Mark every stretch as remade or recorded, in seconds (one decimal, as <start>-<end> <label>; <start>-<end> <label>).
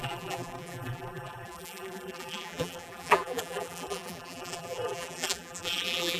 0.0-6.2 remade